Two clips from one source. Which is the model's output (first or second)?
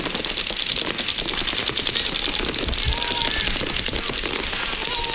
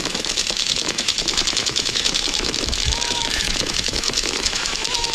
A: second